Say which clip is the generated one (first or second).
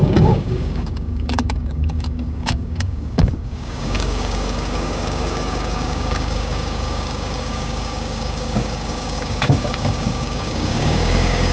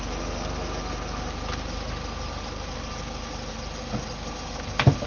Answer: first